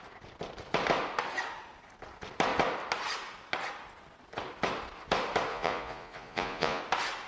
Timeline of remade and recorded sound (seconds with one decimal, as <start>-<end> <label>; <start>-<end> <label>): 0.0-5.5 recorded; 5.5-6.8 remade; 6.8-7.3 recorded